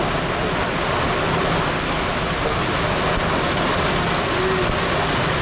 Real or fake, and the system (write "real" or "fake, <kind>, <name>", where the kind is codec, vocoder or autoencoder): real